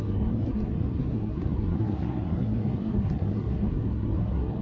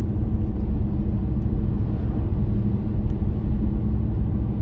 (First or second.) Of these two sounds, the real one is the second